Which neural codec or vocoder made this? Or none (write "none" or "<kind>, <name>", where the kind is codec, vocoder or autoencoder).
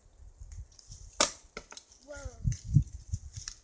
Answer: none